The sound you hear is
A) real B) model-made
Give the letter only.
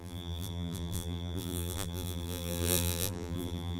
B